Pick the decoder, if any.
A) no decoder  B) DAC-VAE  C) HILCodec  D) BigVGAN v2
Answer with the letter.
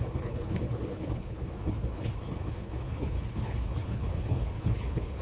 C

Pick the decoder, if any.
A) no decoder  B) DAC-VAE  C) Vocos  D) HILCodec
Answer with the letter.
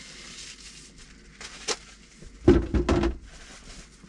A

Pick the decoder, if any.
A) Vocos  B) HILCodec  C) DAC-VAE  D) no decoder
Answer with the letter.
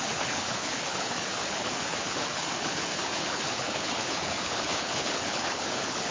B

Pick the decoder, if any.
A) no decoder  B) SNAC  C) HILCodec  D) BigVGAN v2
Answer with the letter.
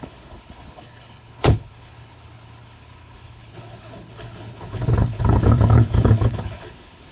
C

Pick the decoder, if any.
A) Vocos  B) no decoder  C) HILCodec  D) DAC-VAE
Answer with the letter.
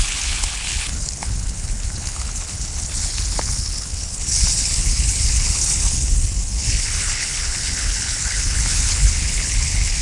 C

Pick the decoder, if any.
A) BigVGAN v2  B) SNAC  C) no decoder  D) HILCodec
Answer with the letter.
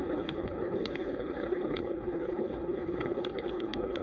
D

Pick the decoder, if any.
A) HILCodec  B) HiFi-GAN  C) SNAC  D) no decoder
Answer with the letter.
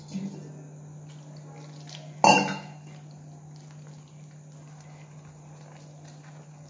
D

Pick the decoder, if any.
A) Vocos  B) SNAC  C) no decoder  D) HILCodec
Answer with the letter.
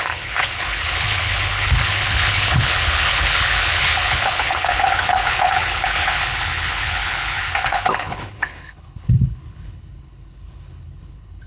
D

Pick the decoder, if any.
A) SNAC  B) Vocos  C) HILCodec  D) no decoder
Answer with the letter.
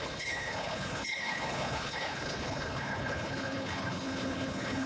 C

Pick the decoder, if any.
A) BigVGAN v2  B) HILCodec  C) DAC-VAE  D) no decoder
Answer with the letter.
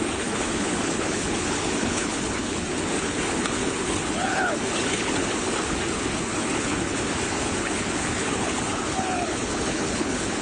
B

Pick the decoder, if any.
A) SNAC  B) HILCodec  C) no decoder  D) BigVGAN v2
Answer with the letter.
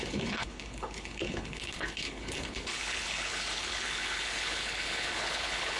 B